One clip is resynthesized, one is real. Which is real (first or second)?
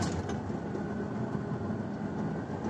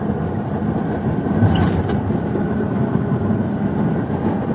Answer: first